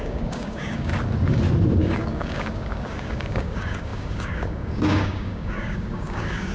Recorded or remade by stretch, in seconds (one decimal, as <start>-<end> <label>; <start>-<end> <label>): 0.0-0.9 remade; 0.9-1.8 recorded; 1.8-6.5 remade